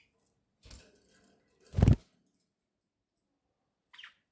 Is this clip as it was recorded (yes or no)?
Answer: yes